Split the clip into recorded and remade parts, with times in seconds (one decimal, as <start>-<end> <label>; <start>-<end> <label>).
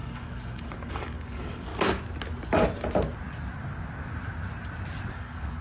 0.0-1.7 remade; 1.7-5.1 recorded; 5.1-5.6 remade